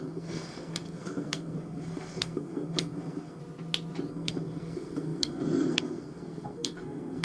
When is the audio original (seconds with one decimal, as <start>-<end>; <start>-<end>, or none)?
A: 3.4-4.1